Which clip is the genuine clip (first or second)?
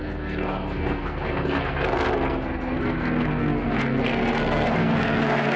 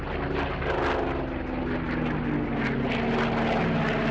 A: second